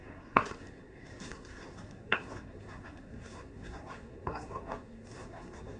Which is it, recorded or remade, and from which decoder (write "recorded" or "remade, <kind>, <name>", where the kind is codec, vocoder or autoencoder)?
remade, codec, SNAC